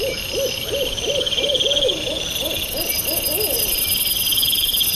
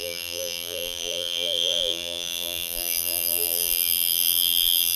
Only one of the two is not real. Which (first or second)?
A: second